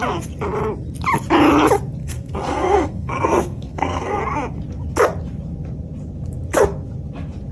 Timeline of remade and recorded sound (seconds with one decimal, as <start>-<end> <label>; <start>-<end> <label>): 0.0-2.0 recorded; 2.0-4.2 remade; 4.2-7.5 recorded